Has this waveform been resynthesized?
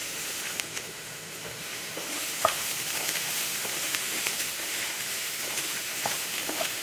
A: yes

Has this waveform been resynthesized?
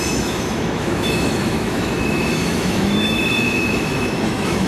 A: yes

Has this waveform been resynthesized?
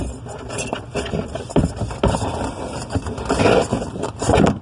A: no